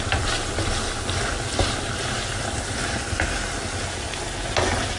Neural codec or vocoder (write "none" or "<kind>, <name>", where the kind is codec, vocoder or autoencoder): none